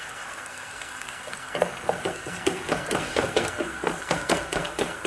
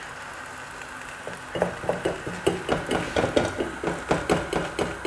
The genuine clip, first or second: second